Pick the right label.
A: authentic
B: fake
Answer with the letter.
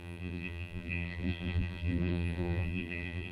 B